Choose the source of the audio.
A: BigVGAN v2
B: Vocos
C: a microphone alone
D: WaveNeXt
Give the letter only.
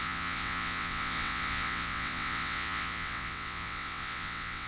D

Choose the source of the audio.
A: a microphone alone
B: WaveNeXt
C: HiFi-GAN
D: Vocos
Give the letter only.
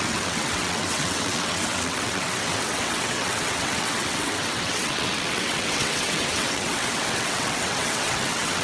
B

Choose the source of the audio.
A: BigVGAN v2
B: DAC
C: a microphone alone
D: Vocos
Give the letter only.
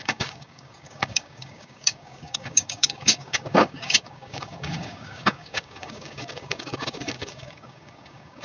B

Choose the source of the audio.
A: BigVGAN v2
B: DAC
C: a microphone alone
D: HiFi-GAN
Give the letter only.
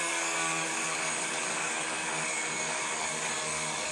B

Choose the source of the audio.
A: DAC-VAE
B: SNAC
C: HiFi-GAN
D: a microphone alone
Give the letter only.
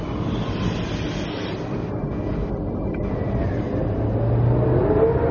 D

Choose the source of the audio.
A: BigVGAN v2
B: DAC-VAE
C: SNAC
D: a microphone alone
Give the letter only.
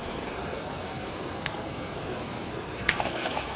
C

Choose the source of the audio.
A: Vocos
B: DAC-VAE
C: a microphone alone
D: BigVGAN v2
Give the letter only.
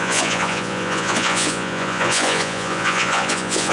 A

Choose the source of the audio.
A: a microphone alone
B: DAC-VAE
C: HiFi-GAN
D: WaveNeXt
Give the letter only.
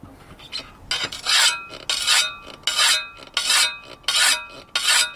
A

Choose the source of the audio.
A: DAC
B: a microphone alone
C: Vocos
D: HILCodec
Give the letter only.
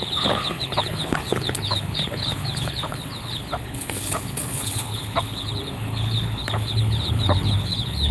D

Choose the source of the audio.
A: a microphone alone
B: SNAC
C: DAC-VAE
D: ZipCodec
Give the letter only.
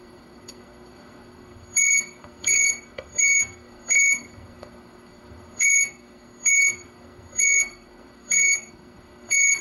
B